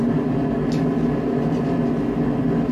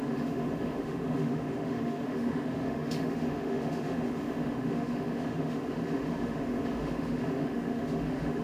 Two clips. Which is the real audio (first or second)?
first